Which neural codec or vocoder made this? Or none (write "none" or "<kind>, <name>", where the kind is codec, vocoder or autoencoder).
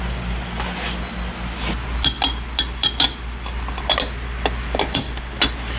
none